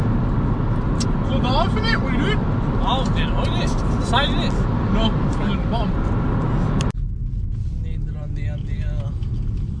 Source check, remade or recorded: recorded